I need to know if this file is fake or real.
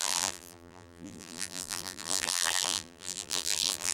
fake